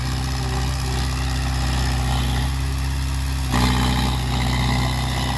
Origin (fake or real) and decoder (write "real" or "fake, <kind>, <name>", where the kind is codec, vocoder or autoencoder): real